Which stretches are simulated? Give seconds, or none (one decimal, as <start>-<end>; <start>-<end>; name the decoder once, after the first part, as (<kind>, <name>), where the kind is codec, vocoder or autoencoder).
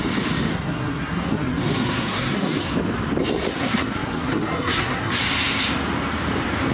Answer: 0.5-2.7 (codec, SNAC); 3.5-5.2